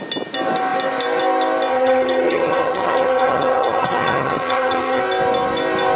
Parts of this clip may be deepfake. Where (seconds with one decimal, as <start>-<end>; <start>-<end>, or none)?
1.7-5.0